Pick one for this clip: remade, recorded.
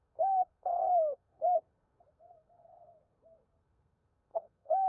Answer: remade